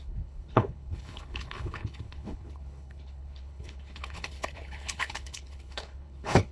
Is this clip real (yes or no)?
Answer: no